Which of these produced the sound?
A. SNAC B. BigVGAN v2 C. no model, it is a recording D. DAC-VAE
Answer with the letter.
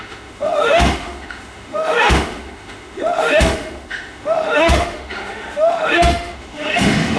D